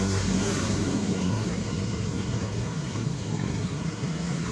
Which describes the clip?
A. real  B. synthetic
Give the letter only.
B